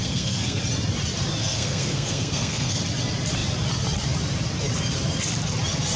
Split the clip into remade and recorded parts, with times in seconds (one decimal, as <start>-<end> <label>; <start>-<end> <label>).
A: 0.0-0.6 remade; 0.6-1.4 recorded; 1.4-2.8 remade; 2.8-6.0 recorded